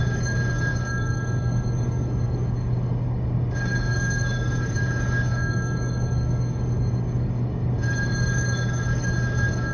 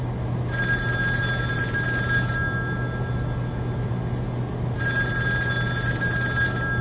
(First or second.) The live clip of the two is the second